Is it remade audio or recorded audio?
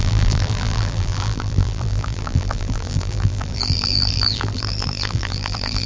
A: remade